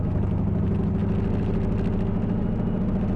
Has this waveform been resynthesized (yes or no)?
no